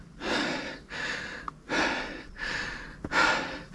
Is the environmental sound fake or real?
real